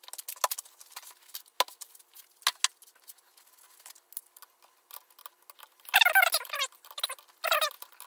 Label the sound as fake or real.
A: real